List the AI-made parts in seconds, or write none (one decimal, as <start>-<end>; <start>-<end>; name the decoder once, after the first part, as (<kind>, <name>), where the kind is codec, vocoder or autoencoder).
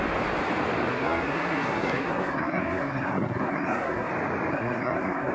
0.9-4.1 (codec, SNAC); 4.5-5.3